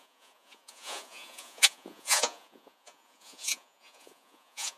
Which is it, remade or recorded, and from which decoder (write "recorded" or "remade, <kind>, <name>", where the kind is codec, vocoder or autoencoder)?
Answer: remade, vocoder, Vocos